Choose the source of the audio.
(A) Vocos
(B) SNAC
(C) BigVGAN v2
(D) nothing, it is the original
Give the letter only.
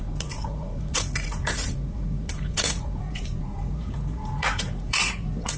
A